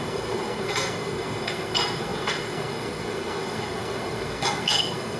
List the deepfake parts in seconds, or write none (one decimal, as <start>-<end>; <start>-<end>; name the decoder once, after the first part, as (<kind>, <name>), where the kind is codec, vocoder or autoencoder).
0.0-5.2 (codec, SNAC)